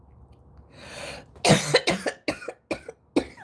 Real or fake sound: real